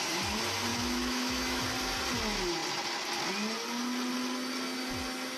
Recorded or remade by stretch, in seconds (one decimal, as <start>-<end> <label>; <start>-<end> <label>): 0.0-0.7 recorded; 0.7-1.6 remade; 1.6-5.4 recorded